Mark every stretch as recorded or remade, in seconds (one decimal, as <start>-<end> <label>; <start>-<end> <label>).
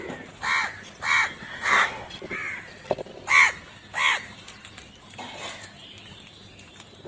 0.0-1.5 recorded; 1.5-2.1 remade; 2.1-7.1 recorded